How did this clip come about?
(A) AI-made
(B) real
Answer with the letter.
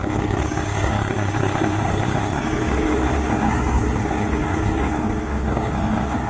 A